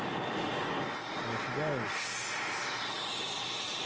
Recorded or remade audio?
recorded